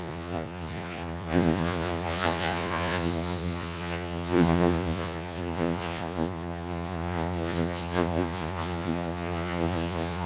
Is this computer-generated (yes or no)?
yes